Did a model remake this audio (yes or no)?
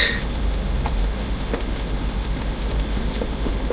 yes